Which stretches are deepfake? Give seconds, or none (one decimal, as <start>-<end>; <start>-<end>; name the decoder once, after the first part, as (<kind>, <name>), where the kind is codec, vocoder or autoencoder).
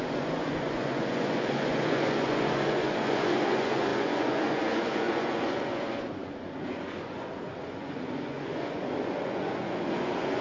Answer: 0.0-10.4 (vocoder, Vocos)